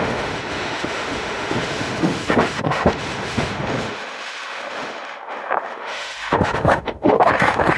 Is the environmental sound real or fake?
fake